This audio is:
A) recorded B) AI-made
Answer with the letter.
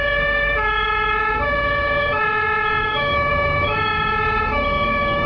B